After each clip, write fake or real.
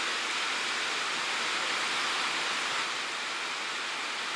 real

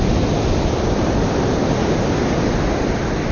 real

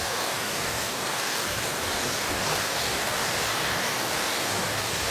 fake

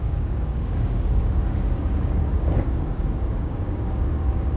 fake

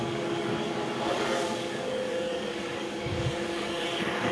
fake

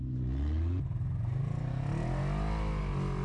real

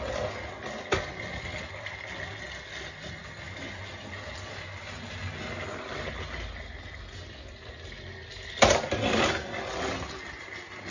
real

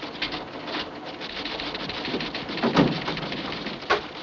real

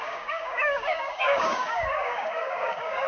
fake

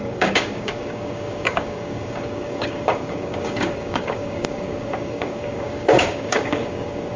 fake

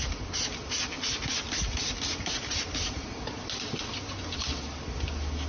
real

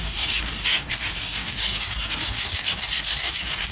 fake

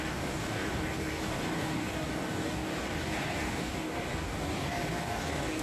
fake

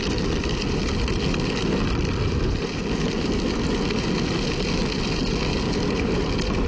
real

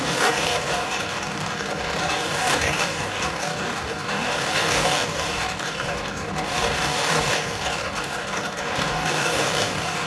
fake